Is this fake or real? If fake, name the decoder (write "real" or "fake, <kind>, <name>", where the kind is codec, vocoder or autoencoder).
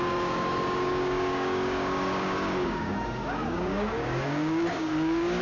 fake, codec, DAC